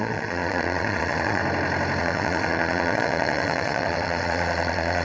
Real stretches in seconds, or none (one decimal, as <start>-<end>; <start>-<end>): 1.4-2.0